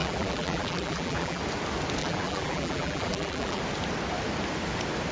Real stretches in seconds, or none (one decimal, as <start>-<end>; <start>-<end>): 1.4-2.0; 3.6-5.1